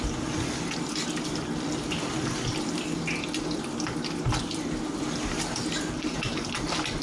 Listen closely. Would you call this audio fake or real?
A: real